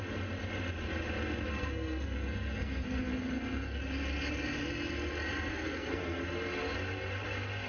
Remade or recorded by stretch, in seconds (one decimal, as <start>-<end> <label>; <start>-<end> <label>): 0.0-1.5 recorded; 1.5-3.8 remade; 3.8-5.5 recorded; 5.5-6.2 remade; 6.2-7.7 recorded

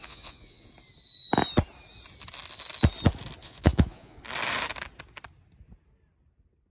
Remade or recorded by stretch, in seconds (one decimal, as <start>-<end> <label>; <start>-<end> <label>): 0.0-0.7 remade; 0.7-3.4 recorded; 3.4-4.2 remade; 4.2-6.7 recorded

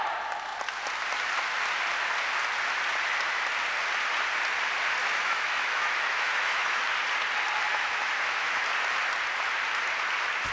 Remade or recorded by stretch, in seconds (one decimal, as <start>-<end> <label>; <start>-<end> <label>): 0.0-5.0 recorded; 5.0-6.8 remade; 6.8-7.7 recorded; 7.7-8.6 remade; 8.6-10.5 recorded

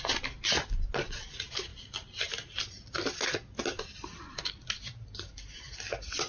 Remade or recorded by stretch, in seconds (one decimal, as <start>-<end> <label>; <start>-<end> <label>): 0.0-6.3 recorded

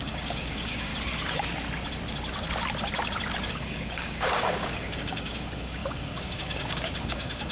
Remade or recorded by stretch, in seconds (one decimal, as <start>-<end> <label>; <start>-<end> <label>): 0.0-0.9 remade; 0.9-3.5 recorded; 3.5-7.5 remade

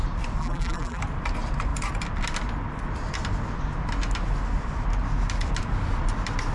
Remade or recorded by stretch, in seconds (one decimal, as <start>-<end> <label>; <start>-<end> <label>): 0.0-0.4 recorded; 0.4-1.0 remade; 1.0-6.5 recorded